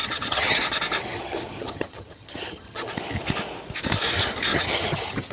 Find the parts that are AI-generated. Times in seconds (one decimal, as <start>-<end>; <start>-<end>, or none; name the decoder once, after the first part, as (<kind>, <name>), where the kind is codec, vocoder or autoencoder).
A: 0.0-0.6 (vocoder, HiFi-GAN); 1.0-2.9; 4.5-5.3